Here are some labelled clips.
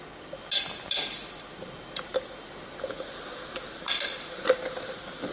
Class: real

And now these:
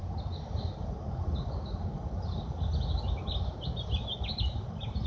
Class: real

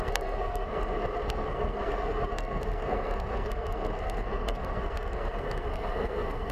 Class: fake